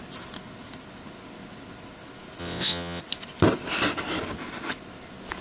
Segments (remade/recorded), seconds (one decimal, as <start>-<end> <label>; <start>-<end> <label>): 0.0-2.4 recorded; 2.4-3.0 remade; 3.0-5.4 recorded